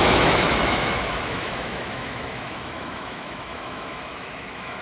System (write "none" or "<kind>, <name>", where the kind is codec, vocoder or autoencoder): autoencoder, DAC-VAE